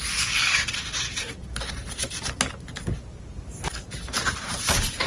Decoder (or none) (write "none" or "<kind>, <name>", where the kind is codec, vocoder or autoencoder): none